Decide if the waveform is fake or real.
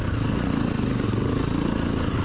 real